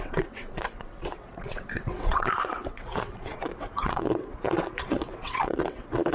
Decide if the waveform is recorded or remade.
remade